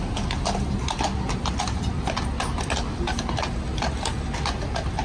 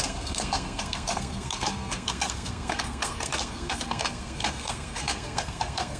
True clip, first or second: first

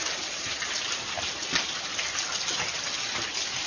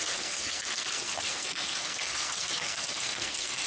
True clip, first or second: first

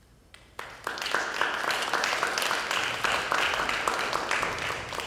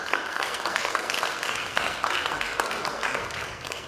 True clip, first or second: first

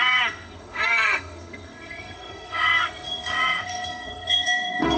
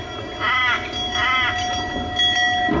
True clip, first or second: second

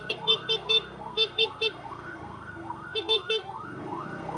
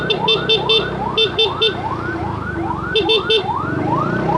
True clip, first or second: second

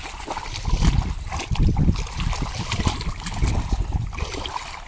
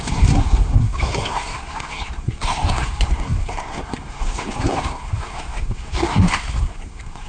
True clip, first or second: first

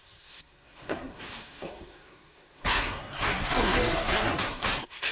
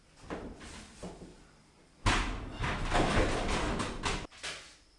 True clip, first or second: second